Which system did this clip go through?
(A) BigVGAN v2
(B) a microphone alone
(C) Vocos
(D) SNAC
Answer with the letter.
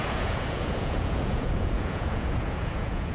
C